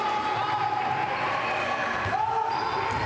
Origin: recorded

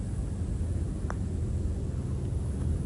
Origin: recorded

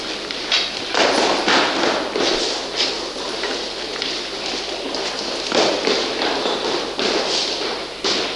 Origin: recorded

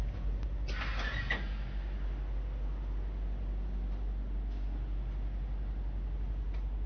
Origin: recorded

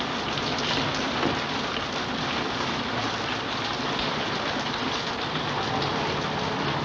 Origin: recorded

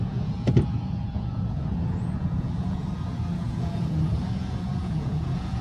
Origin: remade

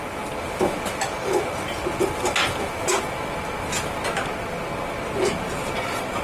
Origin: recorded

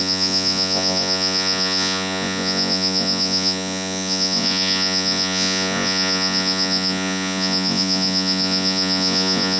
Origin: remade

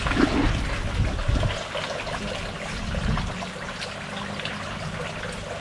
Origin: recorded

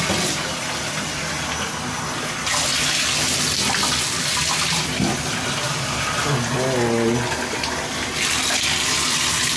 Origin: recorded